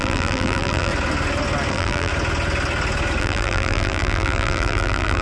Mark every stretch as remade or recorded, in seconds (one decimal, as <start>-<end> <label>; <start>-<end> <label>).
0.0-0.9 remade; 0.9-1.7 recorded; 1.7-2.1 remade; 2.1-3.2 recorded; 3.2-5.2 remade